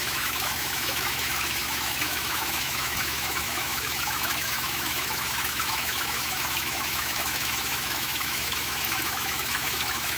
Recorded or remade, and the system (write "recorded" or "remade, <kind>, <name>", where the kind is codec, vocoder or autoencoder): remade, autoencoder, DAC-VAE